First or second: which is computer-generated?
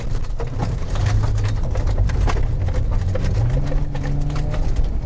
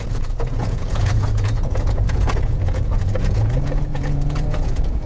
second